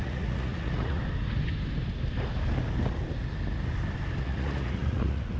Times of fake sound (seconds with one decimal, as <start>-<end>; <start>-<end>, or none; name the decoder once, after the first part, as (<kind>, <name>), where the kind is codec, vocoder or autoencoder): 0.0-1.0 (vocoder, Vocos); 4.2-5.4